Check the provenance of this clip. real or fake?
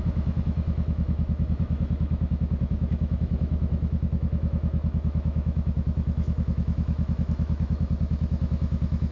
fake